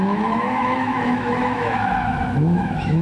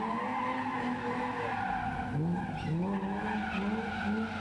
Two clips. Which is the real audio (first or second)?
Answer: second